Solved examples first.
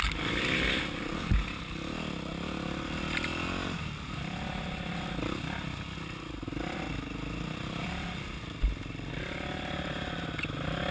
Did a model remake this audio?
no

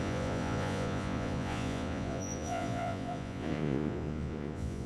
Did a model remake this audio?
yes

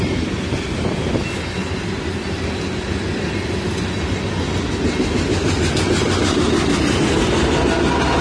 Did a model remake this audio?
no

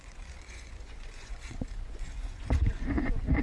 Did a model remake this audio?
yes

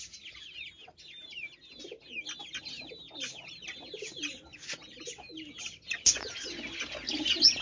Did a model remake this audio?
no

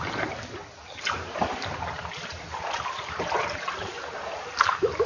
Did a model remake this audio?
no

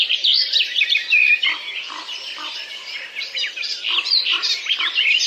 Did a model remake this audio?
no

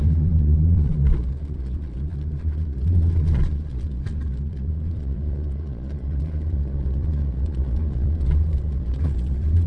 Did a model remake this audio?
yes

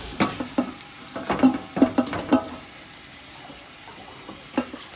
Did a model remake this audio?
no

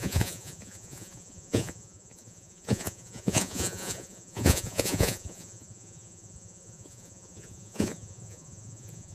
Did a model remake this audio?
yes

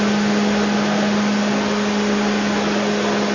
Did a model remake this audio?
no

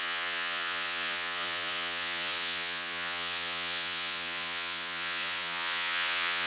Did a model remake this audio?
yes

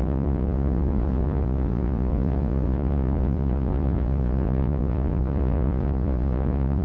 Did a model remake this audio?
yes